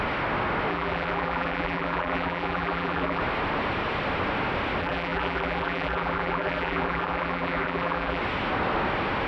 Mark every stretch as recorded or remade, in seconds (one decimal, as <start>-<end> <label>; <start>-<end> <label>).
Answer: 0.0-0.7 recorded; 0.7-3.2 remade; 3.2-4.8 recorded; 4.8-8.2 remade; 8.2-9.3 recorded